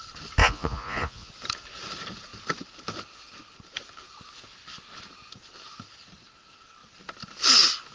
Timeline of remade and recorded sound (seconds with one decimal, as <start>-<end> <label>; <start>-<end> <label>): 0.0-0.4 recorded; 0.4-1.3 remade; 1.3-7.9 recorded